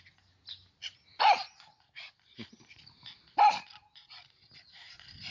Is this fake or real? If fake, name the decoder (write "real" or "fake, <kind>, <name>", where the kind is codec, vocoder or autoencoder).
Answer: real